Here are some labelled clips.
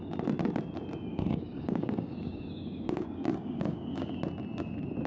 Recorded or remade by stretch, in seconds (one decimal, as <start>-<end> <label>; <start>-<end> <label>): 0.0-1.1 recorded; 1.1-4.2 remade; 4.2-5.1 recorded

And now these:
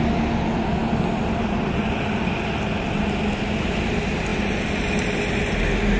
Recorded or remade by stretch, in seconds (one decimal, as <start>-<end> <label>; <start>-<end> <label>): 0.0-6.0 recorded

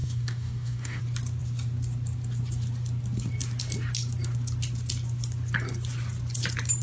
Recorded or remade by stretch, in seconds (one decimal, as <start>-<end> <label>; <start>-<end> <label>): 0.0-1.0 remade; 1.0-6.8 recorded

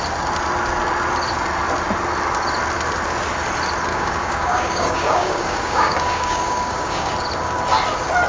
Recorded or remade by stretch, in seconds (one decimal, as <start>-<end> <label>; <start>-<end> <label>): 0.0-3.9 recorded; 3.9-7.1 remade; 7.1-8.3 recorded